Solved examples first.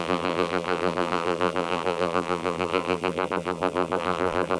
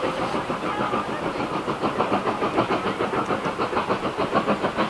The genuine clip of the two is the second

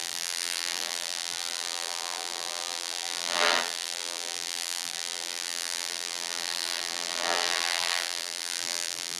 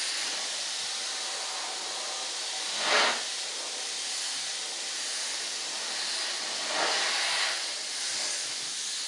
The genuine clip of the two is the second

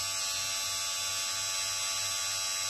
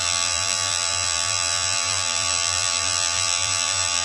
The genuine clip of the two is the first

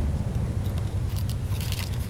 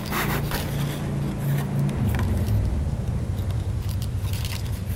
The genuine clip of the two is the second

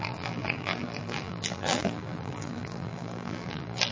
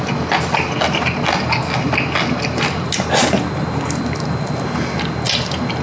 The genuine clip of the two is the second